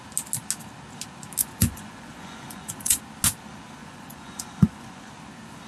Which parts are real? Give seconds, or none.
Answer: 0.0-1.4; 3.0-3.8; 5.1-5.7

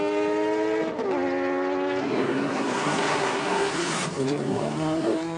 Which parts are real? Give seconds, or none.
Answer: 0.0-2.0

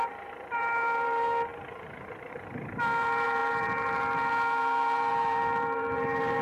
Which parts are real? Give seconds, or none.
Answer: none

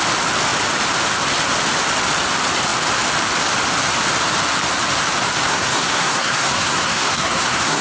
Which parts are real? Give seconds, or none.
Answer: 0.0-5.5